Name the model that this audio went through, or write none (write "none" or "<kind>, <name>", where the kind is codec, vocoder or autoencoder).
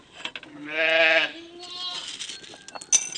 none